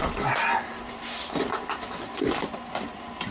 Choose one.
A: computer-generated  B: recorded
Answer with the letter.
B